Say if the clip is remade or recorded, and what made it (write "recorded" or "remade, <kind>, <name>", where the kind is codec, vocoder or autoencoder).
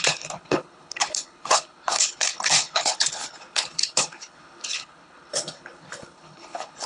remade, codec, HILCodec